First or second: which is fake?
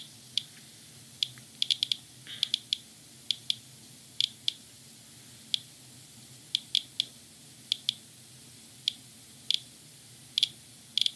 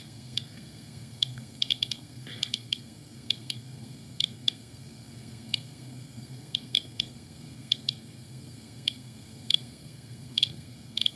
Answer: second